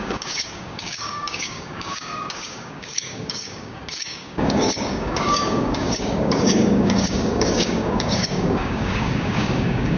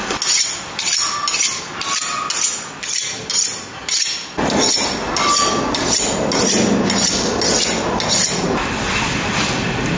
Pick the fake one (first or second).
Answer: first